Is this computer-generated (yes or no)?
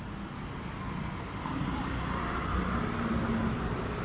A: no